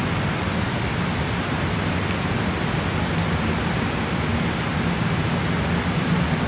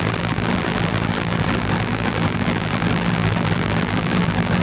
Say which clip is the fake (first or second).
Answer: second